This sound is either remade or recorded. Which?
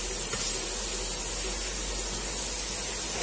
recorded